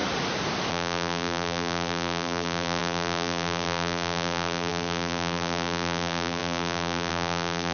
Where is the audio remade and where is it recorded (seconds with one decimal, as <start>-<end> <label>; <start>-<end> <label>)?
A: 0.0-0.7 recorded; 0.7-7.7 remade